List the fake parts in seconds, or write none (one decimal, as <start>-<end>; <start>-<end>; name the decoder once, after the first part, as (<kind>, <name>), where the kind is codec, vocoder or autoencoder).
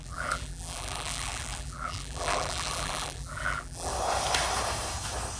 0.0-3.9 (vocoder, BigVGAN v2)